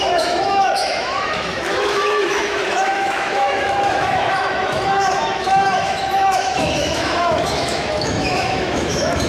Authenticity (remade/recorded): remade